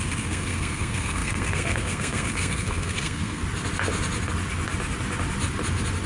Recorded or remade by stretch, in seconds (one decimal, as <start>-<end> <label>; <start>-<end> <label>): 0.0-3.4 remade; 3.4-6.1 recorded